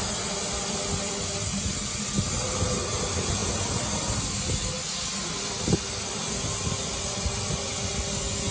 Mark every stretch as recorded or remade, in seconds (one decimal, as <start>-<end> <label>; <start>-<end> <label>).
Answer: 0.0-8.5 recorded